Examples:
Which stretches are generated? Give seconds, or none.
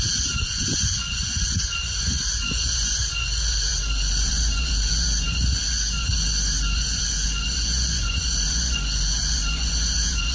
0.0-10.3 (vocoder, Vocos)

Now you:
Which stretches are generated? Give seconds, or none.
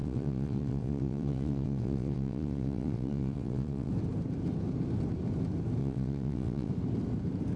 0.0-3.9 (vocoder, WaveNeXt); 5.8-6.7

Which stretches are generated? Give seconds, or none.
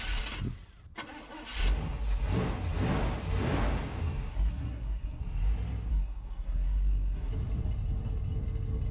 4.3-5.2 (codec, SNAC); 5.9-7.3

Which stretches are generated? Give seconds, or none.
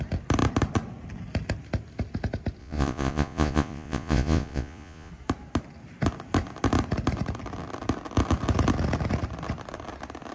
2.6-5.1 (vocoder, Vocos)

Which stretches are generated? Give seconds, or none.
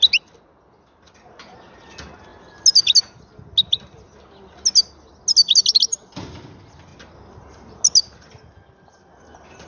none